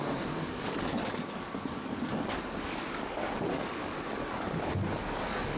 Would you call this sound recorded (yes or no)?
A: no